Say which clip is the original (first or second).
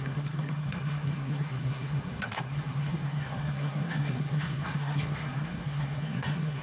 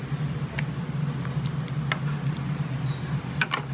second